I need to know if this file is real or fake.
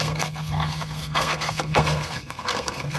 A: fake